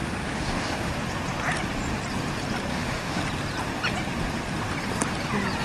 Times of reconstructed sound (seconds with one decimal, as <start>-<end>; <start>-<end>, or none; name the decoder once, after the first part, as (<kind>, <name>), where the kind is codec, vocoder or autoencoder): 0.0-0.9 (autoencoder, DAC-VAE); 2.7-3.2